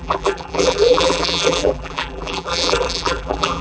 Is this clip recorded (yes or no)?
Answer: no